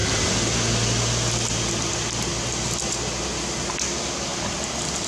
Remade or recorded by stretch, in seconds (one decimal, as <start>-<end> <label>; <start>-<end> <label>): 0.0-5.1 recorded